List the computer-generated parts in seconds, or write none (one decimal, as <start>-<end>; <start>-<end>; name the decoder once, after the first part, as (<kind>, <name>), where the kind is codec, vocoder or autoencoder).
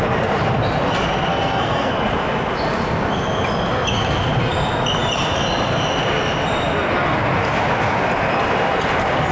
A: 1.3-1.9 (codec, SNAC)